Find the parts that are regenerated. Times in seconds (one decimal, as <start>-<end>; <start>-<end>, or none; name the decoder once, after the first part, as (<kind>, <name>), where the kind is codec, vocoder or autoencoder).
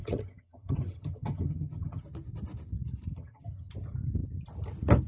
0.0-2.0 (vocoder, HiFi-GAN); 3.1-3.7